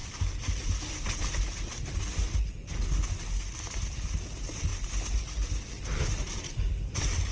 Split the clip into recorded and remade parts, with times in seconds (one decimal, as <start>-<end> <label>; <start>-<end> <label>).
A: 0.0-7.3 recorded